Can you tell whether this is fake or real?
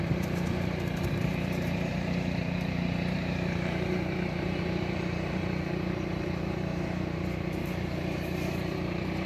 fake